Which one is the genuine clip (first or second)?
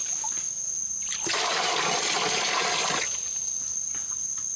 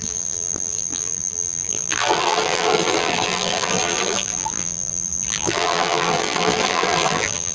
first